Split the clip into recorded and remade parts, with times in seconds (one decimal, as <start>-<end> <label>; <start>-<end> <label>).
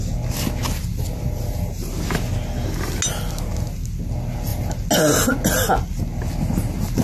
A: 0.0-7.0 recorded